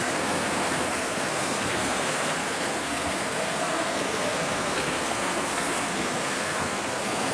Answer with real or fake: fake